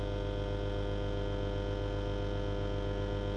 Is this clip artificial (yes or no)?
no